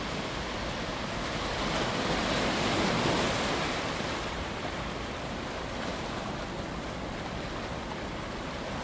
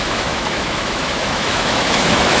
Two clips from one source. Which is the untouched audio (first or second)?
first